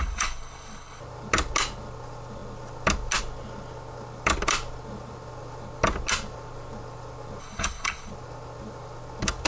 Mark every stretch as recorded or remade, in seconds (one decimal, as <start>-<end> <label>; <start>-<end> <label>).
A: 0.0-1.0 remade; 1.0-7.4 recorded; 7.4-8.1 remade; 8.1-9.5 recorded